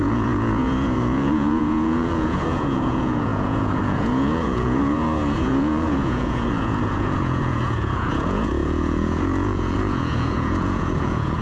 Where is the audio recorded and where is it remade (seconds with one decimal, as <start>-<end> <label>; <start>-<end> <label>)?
0.0-11.4 remade